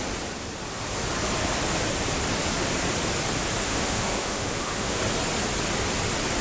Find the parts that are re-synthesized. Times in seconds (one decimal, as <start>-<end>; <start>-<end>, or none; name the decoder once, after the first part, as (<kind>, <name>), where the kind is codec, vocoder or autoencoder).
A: 3.6-5.0 (autoencoder, DAC-VAE)